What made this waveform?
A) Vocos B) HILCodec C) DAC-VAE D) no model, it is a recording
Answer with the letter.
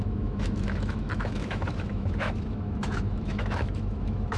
C